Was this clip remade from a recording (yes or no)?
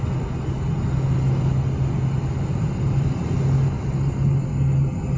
no